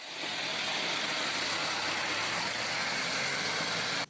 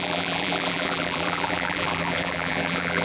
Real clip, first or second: first